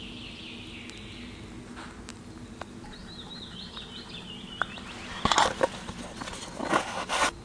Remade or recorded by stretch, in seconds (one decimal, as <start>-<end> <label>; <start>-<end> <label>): 0.0-7.4 recorded